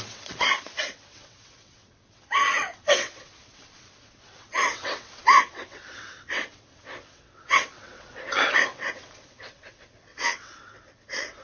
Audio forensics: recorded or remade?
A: remade